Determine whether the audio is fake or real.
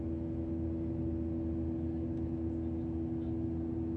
real